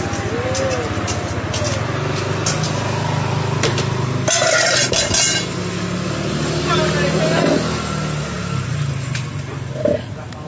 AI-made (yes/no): no